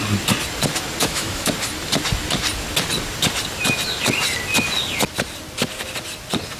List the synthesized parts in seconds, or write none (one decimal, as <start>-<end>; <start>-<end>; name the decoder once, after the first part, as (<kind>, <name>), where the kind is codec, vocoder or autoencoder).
1.0-1.5 (autoencoder, DAC-VAE)